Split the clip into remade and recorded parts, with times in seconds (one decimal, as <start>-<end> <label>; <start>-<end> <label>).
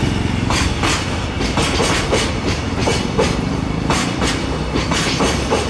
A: 0.0-5.7 recorded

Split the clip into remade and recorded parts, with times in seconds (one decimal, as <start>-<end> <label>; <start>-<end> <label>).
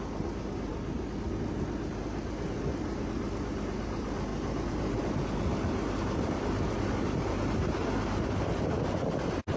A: 0.0-9.6 recorded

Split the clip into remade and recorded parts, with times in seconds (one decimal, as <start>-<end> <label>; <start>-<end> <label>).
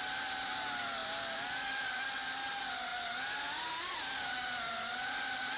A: 0.0-5.6 recorded